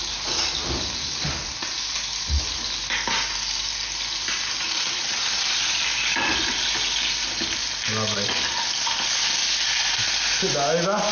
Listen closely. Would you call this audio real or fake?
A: real